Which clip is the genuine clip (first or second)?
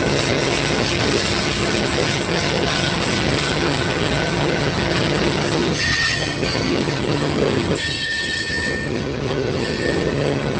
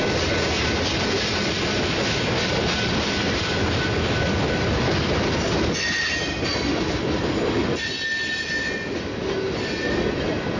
second